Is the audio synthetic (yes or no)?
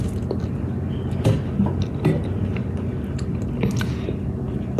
no